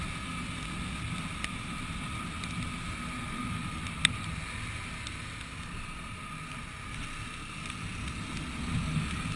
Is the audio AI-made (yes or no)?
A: no